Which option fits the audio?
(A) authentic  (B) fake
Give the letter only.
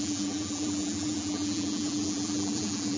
B